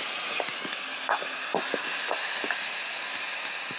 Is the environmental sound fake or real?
real